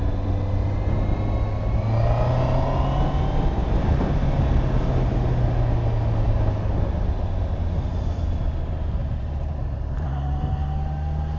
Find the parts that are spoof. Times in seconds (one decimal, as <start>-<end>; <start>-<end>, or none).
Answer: 3.6-4.4; 9.0-9.5